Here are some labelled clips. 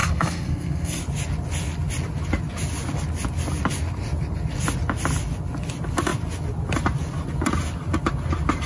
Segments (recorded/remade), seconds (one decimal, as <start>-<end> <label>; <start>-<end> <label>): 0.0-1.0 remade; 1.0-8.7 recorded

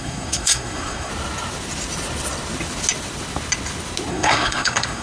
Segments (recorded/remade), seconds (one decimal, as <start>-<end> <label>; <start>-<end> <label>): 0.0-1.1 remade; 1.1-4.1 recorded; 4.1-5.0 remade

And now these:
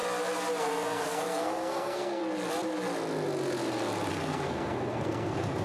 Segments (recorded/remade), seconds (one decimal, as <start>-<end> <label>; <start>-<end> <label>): 0.0-0.6 recorded; 0.6-2.2 remade; 2.2-4.1 recorded; 4.1-5.6 remade